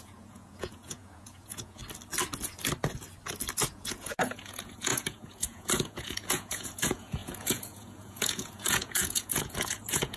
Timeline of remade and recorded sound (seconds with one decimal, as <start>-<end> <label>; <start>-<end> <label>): 0.0-1.8 remade; 1.8-3.7 recorded; 3.7-10.2 remade